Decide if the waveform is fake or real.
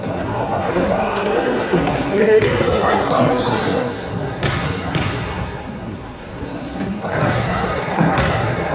fake